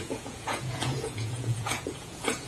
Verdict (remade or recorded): remade